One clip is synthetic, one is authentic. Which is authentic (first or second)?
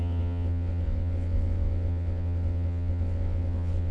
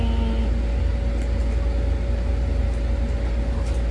second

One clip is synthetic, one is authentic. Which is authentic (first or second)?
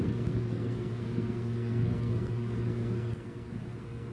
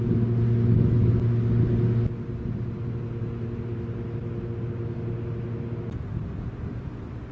second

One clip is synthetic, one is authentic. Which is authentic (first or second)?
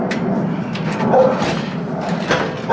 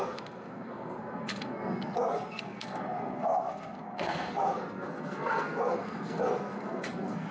first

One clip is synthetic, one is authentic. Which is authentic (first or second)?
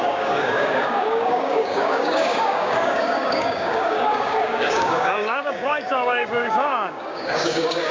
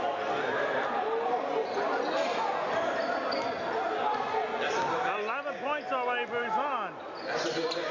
second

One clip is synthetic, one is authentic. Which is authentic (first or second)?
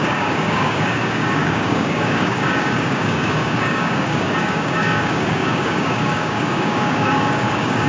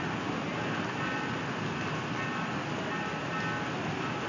second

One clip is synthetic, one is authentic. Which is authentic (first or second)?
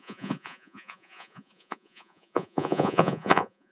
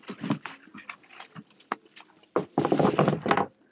second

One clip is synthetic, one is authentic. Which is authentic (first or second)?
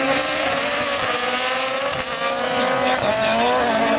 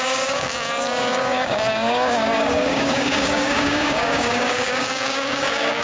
first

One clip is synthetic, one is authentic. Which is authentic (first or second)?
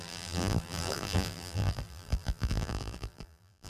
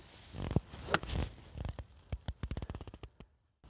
second